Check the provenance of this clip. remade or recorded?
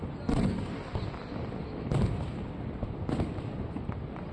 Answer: recorded